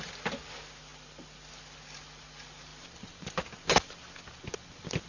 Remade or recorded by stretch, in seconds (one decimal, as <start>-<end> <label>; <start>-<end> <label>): 0.0-5.1 recorded